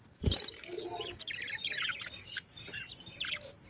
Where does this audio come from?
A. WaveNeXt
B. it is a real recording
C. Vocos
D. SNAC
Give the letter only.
B